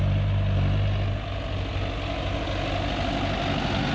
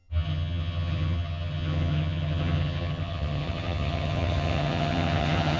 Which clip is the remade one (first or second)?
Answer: second